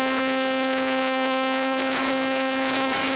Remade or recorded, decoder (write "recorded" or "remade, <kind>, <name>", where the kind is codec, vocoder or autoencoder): remade, codec, DAC